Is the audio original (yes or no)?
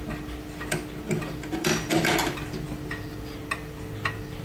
no